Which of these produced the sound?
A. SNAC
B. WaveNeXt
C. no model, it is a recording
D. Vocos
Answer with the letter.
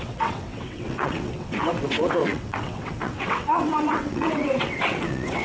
B